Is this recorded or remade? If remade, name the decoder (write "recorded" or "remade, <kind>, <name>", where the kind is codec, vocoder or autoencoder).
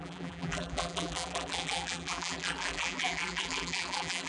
remade, vocoder, BigVGAN v2